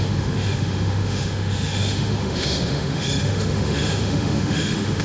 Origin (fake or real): fake